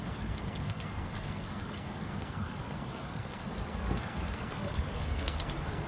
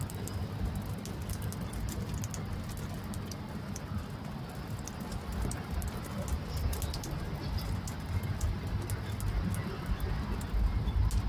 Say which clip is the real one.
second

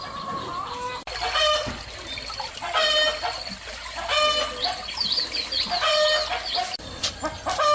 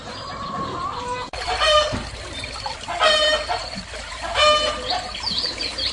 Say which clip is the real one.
first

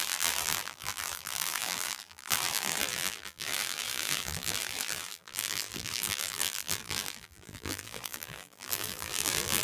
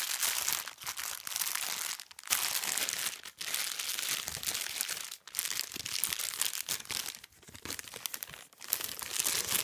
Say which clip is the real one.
second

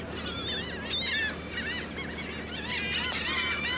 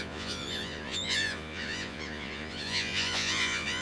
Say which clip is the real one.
first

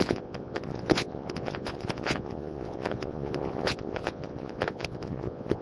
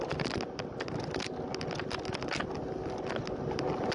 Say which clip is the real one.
second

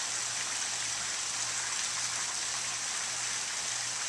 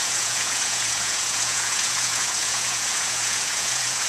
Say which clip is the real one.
first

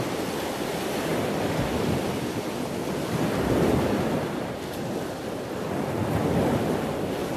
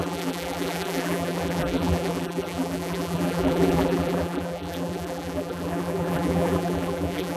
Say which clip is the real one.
first